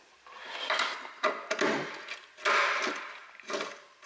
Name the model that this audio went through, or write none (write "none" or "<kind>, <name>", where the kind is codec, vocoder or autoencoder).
none